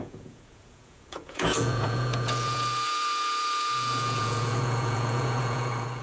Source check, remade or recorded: remade